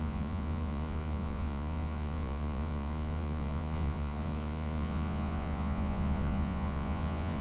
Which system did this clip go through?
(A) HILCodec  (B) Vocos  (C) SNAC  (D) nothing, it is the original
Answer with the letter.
B